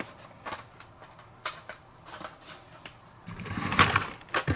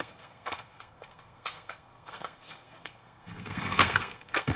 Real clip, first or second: first